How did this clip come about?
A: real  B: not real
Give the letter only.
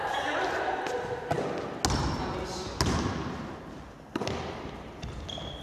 A